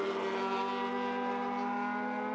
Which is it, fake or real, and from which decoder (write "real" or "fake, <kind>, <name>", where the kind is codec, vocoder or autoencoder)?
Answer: real